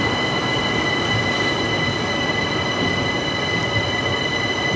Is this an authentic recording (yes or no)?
yes